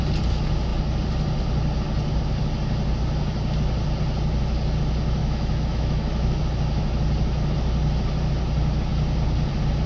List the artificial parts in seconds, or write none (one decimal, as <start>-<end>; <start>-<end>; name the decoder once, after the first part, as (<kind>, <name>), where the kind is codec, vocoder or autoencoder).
5.2-6.4 (autoencoder, DAC-VAE)